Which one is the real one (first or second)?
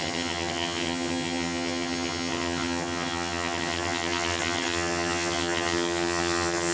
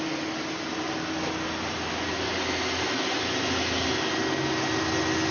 second